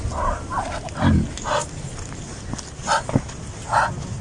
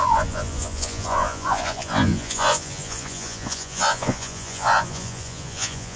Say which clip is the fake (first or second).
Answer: second